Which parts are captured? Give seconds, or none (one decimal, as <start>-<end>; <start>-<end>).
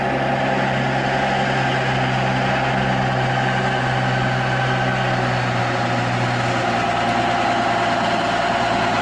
0.0-9.0